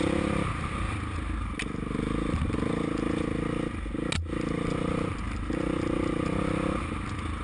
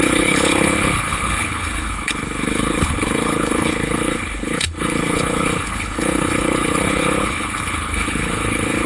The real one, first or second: first